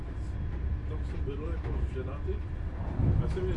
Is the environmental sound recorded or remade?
recorded